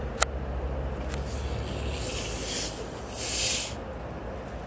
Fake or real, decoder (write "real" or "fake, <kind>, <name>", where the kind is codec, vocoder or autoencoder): real